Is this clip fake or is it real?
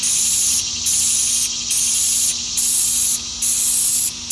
real